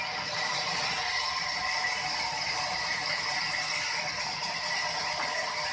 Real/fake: real